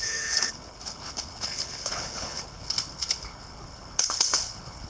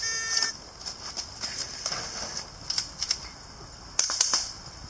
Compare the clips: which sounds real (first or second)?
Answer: second